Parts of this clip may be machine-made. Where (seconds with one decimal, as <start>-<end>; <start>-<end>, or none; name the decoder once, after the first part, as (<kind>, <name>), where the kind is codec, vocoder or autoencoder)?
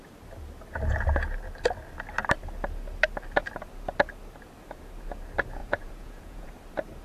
5.6-6.5 (vocoder, Vocos)